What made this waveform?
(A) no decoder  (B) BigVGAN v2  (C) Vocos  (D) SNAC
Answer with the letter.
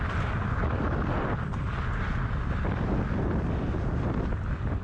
A